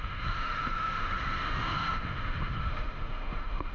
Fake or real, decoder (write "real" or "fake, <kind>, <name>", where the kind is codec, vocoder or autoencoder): fake, autoencoder, DAC-VAE